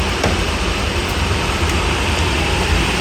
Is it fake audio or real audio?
fake